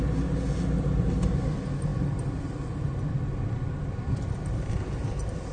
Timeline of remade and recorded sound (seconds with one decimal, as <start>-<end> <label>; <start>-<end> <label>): 0.0-5.5 recorded